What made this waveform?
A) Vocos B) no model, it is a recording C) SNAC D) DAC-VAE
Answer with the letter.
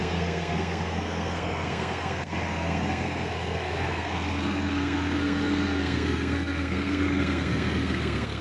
C